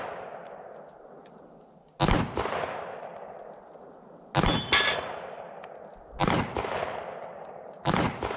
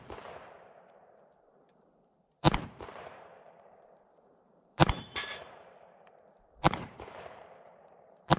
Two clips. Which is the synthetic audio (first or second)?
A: second